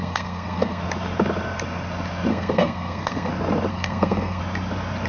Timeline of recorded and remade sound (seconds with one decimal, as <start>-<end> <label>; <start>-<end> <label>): 0.0-0.8 remade; 0.8-2.3 recorded; 2.3-3.3 remade; 3.3-3.7 recorded; 3.7-4.4 remade; 4.4-5.1 recorded

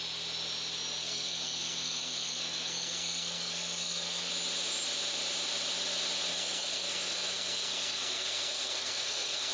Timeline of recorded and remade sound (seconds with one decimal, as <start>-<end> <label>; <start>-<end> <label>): 0.0-1.0 recorded; 1.0-4.3 remade; 4.3-6.3 recorded; 6.3-9.5 remade

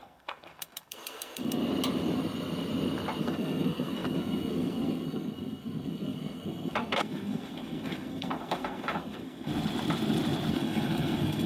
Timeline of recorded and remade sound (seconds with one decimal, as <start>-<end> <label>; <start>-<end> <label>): 0.0-1.6 remade; 1.6-3.2 recorded; 3.2-9.5 remade; 9.5-10.5 recorded; 10.5-11.5 remade

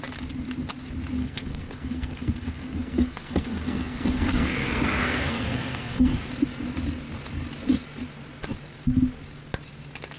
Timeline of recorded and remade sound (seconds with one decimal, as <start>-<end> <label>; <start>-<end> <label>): 0.0-1.2 recorded; 1.2-6.3 remade; 6.3-10.2 recorded

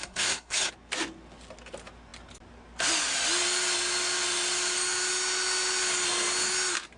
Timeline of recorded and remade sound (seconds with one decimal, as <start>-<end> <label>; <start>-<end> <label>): 0.0-0.7 remade; 0.7-7.0 recorded

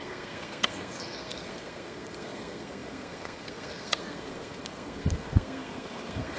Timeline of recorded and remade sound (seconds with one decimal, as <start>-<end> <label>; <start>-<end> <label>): 0.0-6.4 remade

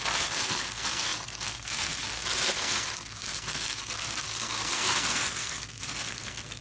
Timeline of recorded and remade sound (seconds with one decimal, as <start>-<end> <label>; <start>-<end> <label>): 0.0-6.6 remade

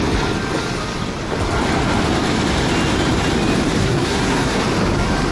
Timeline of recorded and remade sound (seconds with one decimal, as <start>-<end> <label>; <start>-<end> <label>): 0.0-3.8 recorded; 3.8-4.6 remade; 4.6-5.3 recorded